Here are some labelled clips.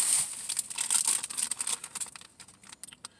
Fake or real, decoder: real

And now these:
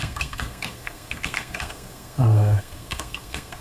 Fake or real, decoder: fake, codec, SNAC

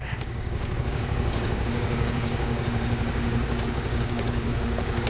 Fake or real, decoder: fake, codec, DAC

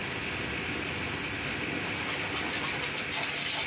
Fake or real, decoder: real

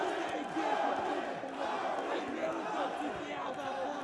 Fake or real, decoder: real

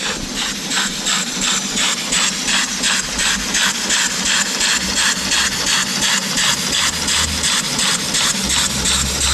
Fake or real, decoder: real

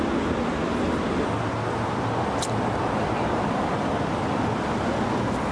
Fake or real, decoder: real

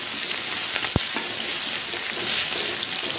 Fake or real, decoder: real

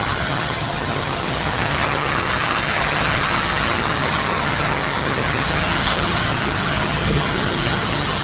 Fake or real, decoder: fake, vocoder, HiFi-GAN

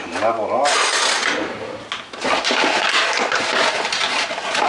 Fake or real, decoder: real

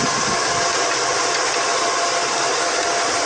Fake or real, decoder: real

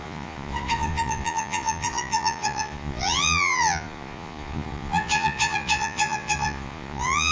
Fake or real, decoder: fake, vocoder, Vocos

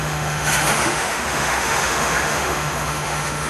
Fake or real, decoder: fake, autoencoder, DAC-VAE